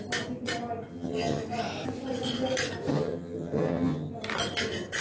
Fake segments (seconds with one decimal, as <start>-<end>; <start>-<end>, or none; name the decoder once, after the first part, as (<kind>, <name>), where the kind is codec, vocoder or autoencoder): 0.9-1.4 (vocoder, HiFi-GAN); 2.9-4.1